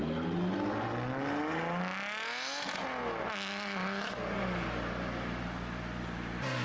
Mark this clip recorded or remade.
recorded